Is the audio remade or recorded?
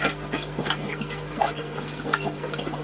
remade